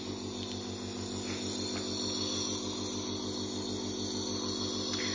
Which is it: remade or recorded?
recorded